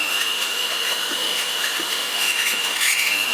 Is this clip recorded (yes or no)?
no